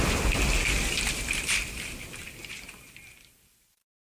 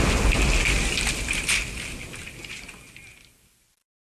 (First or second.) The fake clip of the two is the first